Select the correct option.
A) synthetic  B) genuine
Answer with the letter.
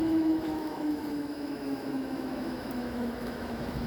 A